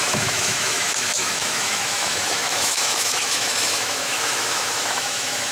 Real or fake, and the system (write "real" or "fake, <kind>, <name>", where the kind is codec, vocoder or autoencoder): fake, autoencoder, DAC-VAE